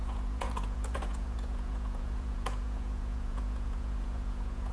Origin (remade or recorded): remade